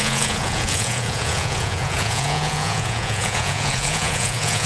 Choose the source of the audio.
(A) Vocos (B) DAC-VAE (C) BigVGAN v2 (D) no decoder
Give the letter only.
A